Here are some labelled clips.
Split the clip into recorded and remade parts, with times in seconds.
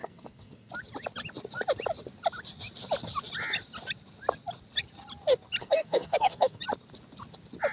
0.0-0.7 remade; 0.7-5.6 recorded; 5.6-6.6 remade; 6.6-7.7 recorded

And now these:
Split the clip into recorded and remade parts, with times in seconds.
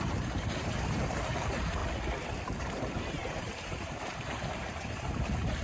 0.0-1.8 remade; 1.8-2.6 recorded; 2.6-5.6 remade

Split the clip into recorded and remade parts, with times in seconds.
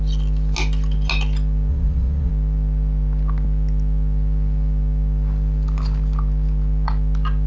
0.0-1.7 recorded; 1.7-2.3 remade; 2.3-7.5 recorded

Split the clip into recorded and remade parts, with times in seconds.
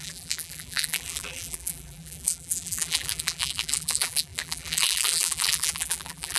0.0-6.4 remade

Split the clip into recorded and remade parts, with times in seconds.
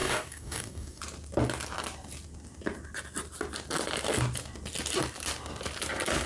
0.0-1.0 remade; 1.0-6.3 recorded